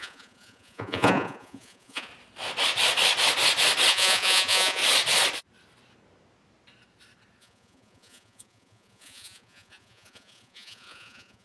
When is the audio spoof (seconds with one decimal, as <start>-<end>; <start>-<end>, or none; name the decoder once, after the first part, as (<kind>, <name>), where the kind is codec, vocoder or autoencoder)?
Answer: 0.0-2.1 (vocoder, Vocos); 3.9-4.8; 7.4-11.4